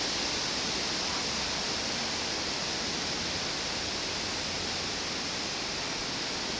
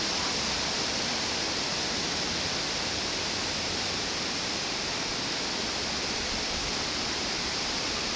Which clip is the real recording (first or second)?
first